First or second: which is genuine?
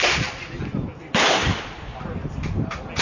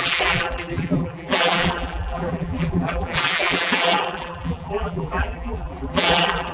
first